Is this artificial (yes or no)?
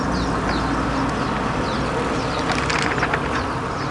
no